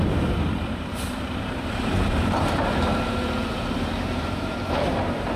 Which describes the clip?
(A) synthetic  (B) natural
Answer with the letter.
A